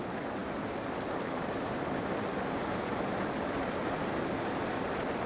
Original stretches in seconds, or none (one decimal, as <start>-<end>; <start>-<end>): 0.0-5.3